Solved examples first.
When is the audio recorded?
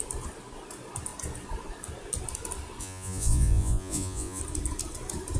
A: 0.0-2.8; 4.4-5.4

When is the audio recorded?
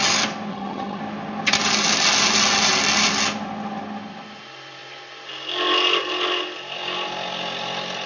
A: 0.0-0.5; 1.0-8.1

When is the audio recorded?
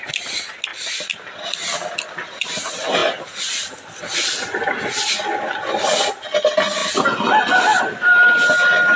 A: 0.0-9.0